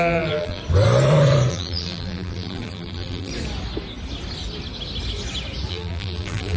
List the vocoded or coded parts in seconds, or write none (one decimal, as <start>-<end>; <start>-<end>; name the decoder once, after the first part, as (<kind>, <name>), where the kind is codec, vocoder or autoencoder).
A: 0.0-0.6 (vocoder, BigVGAN v2); 1.5-3.3; 5.7-6.6